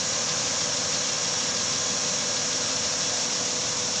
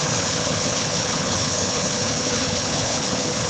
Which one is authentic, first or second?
first